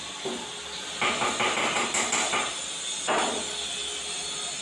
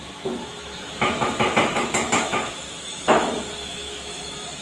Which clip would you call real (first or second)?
first